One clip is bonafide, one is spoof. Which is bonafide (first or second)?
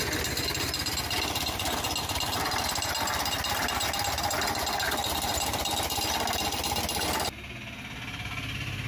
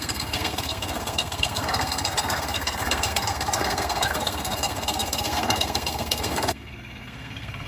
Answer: first